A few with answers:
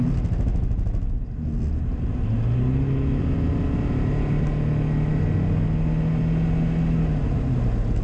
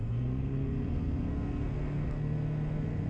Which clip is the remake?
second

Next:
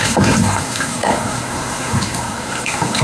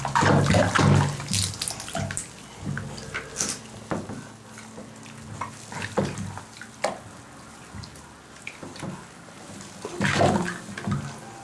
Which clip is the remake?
first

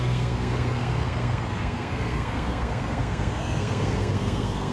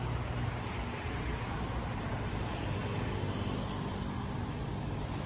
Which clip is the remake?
first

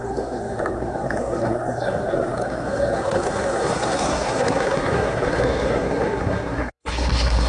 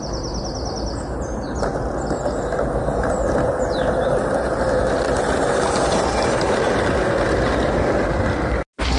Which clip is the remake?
first